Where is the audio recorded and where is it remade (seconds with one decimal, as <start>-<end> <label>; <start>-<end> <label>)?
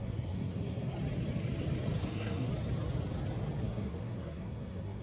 0.0-0.9 remade; 0.9-2.0 recorded; 2.0-2.5 remade; 2.5-3.6 recorded; 3.6-5.0 remade